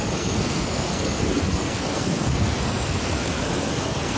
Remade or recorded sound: remade